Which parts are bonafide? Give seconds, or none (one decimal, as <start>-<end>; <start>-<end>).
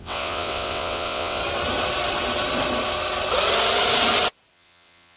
1.4-4.5